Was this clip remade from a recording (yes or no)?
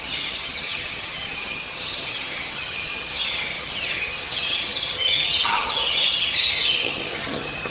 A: yes